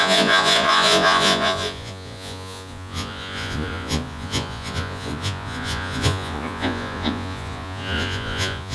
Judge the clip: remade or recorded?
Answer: remade